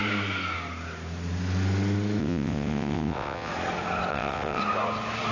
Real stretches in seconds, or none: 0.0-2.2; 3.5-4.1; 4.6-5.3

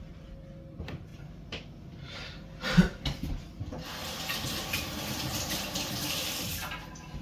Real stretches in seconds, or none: 0.0-7.2

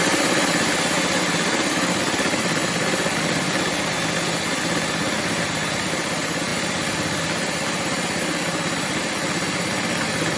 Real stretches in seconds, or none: 0.0-10.4

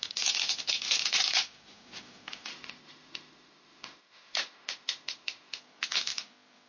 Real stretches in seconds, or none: 0.0-2.5; 5.6-6.7

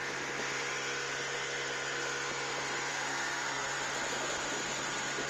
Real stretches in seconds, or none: 0.0-2.9; 3.7-5.3

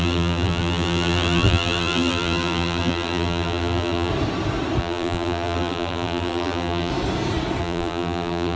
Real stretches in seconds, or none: 4.1-4.8; 6.9-7.6